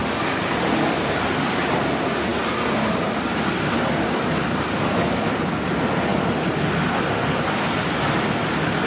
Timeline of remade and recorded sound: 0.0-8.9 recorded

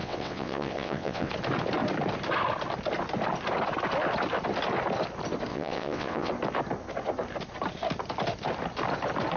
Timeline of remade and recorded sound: 0.0-1.3 remade; 1.3-5.5 recorded; 5.5-6.3 remade; 6.3-9.4 recorded

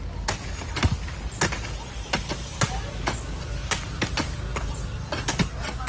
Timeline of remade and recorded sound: 0.0-5.9 recorded

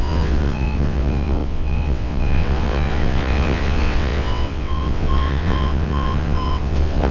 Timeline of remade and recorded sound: 0.0-7.1 remade

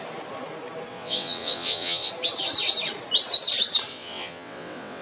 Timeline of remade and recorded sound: 0.0-0.9 recorded; 0.9-2.1 remade; 2.1-3.9 recorded; 3.9-5.0 remade

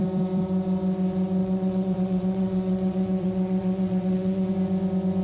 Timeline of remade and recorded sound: 0.0-1.4 recorded; 1.4-4.5 remade; 4.5-5.2 recorded

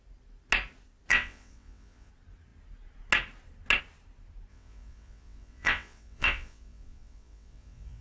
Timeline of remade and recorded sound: 0.0-1.1 recorded; 1.1-2.1 remade; 2.1-4.5 recorded; 4.5-8.0 remade